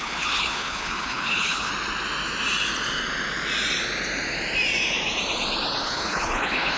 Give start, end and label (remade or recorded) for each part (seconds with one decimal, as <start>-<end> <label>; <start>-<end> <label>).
0.0-1.7 remade; 1.7-5.8 recorded; 5.8-6.8 remade

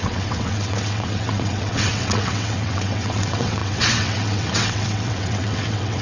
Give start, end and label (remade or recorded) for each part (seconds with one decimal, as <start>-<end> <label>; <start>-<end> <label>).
0.0-6.0 remade

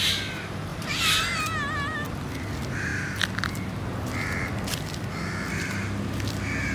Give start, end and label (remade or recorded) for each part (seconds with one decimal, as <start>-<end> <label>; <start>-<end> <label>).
0.0-0.7 recorded; 0.7-1.2 remade; 1.2-6.7 recorded